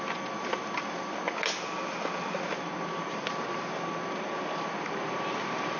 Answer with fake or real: real